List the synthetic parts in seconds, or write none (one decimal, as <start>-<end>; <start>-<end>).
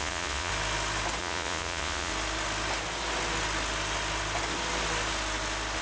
0.0-0.5; 1.2-2.1